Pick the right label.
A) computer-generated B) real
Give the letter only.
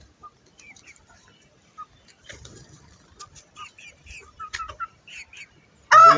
B